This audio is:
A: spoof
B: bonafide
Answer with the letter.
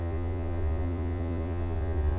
A